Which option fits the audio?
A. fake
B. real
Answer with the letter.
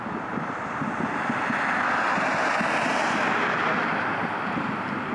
B